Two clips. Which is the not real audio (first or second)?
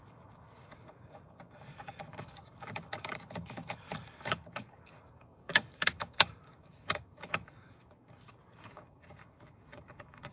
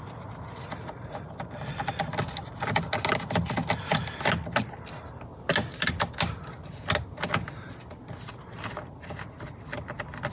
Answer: first